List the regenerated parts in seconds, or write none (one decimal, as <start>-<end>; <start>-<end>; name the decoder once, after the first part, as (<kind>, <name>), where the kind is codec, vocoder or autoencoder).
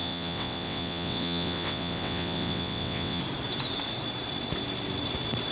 0.0-3.2 (vocoder, WaveNeXt)